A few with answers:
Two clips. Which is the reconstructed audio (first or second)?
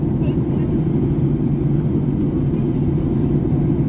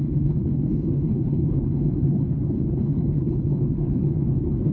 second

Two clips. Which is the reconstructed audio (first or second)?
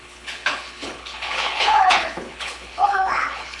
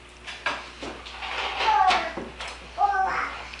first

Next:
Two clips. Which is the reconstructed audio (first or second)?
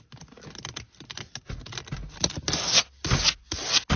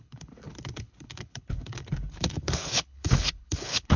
second